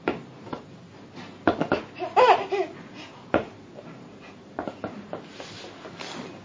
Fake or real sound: real